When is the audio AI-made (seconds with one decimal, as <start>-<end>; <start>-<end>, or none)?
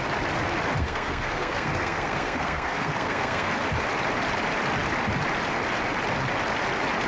0.8-3.5